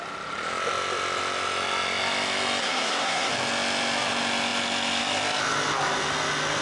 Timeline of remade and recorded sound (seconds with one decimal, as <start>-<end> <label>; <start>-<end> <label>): 0.0-2.6 recorded; 2.6-3.3 remade; 3.3-6.6 recorded